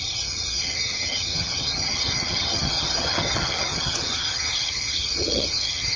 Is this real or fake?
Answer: fake